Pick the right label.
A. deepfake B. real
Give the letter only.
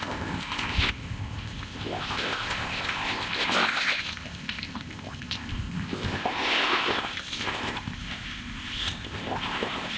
A